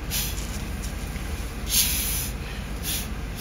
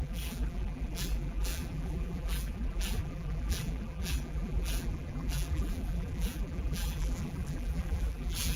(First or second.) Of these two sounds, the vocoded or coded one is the second